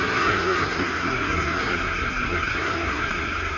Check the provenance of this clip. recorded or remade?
remade